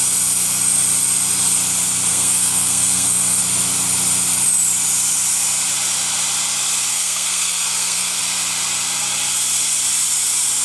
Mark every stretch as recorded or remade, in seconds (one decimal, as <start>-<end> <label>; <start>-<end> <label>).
0.0-2.1 recorded; 2.1-3.4 remade; 3.4-6.9 recorded; 6.9-8.2 remade; 8.2-10.6 recorded